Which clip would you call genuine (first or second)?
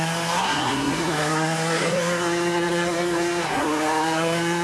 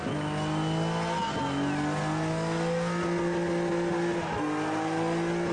second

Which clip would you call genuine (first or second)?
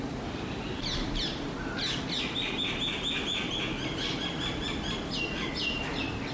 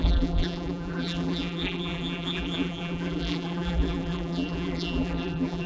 first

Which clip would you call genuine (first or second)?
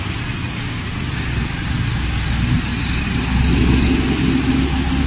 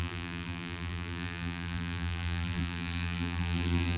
first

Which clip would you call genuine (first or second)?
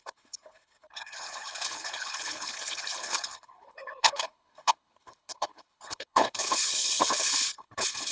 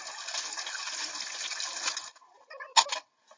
second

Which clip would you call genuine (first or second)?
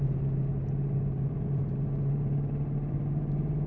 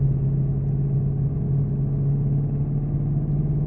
second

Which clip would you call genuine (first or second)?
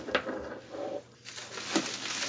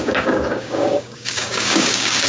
first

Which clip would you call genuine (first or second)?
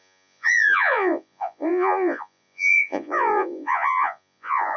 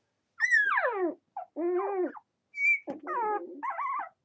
second